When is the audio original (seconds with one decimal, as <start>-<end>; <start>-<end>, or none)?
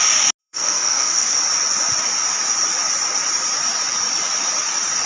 0.0-0.4; 1.4-5.1